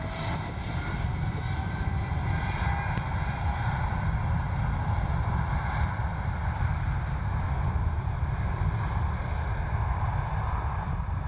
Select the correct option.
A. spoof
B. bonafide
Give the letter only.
B